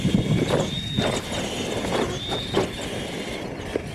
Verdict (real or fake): real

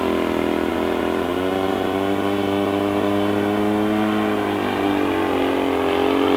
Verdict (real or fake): real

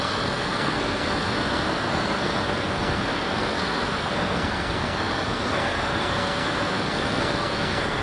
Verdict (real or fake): fake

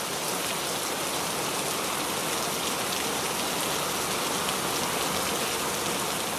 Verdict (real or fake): real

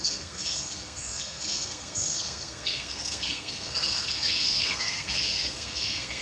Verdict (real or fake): fake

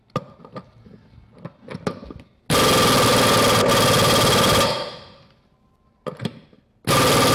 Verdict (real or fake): real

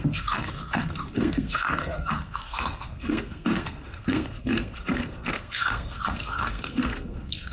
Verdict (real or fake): fake